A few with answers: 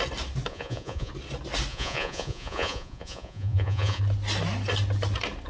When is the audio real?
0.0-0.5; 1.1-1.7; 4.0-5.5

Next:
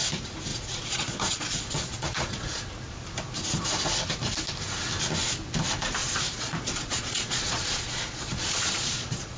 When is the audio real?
0.0-0.5; 2.6-6.0

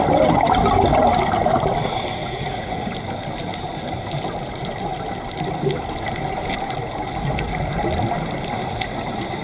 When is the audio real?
0.0-2.2; 2.9-9.4

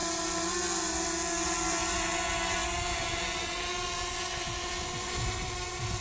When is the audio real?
0.0-6.0

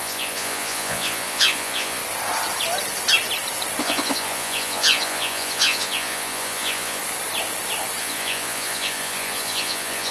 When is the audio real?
2.0-3.8; 7.0-8.0